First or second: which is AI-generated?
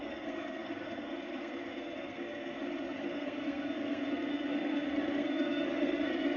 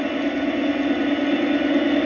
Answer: first